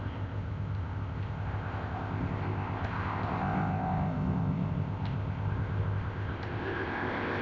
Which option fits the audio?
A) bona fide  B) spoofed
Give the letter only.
B